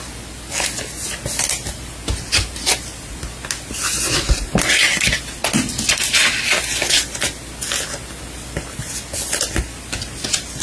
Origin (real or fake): real